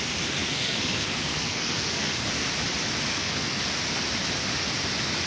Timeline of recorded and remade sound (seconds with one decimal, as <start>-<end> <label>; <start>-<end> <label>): 0.0-0.4 recorded; 0.4-2.3 remade; 2.3-3.1 recorded; 3.1-3.6 remade; 3.6-5.3 recorded